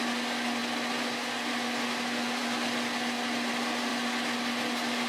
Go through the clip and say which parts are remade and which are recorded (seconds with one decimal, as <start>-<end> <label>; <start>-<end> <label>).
0.0-5.1 recorded